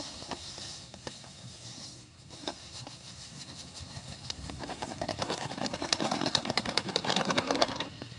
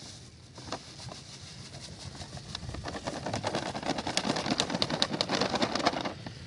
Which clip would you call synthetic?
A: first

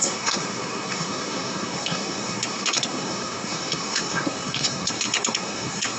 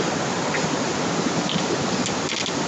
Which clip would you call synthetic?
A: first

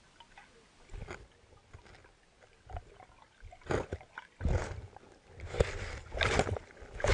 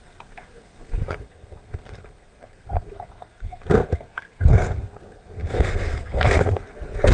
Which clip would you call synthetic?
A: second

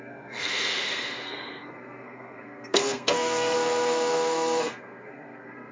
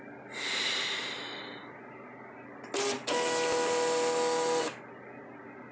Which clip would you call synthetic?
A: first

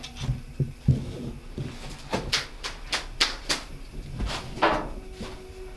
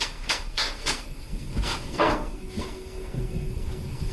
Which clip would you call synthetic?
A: second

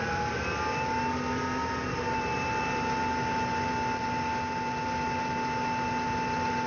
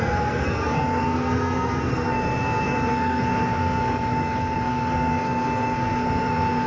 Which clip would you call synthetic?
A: second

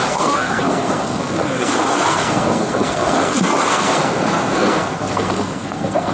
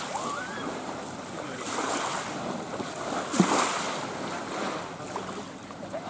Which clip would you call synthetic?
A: first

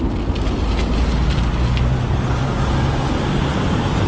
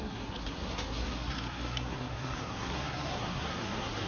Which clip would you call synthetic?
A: second